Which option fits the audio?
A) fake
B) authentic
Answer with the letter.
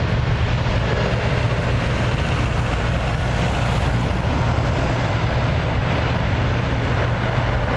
B